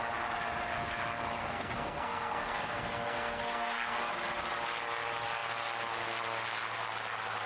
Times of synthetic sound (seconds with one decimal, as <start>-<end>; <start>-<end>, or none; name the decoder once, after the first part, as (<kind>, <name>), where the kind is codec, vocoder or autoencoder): 1.4-4.1 (codec, SNAC)